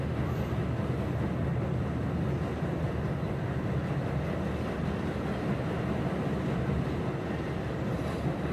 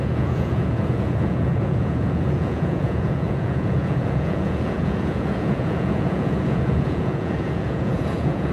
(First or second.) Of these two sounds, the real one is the first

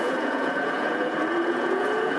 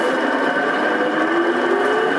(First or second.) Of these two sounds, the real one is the second